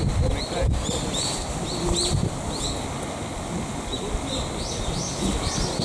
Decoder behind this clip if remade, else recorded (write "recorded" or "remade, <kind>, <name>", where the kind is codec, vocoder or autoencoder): recorded